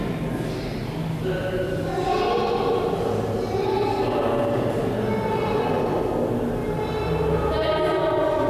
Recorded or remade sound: recorded